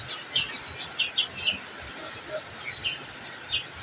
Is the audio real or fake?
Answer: real